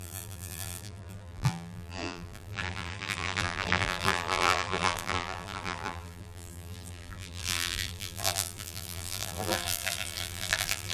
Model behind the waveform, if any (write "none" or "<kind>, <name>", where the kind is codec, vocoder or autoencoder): vocoder, BigVGAN v2